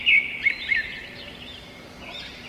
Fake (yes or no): no